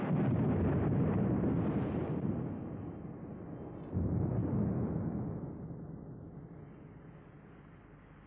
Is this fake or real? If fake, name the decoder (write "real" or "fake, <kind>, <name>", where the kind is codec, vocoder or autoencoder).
real